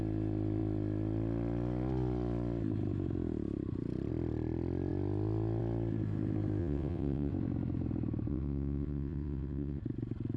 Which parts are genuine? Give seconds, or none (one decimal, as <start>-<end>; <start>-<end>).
0.0-6.6; 7.3-8.3; 9.8-10.4